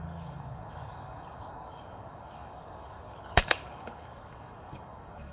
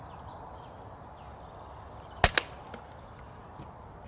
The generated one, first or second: first